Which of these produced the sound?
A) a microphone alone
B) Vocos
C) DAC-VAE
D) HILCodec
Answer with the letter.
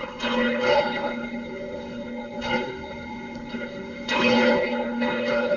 D